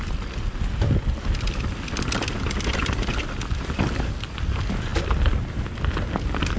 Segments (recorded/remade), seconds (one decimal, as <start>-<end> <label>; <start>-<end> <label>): 0.0-6.6 recorded